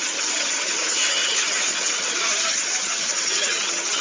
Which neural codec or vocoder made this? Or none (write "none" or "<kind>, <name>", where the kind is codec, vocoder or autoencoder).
vocoder, HiFi-GAN